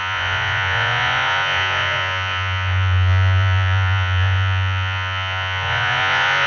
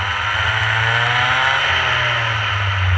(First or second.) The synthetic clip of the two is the first